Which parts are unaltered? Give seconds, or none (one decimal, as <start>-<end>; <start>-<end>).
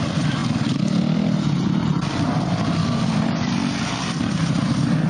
0.0-5.1